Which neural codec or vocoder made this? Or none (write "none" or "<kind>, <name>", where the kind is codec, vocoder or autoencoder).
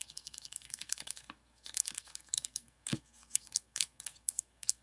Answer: codec, SNAC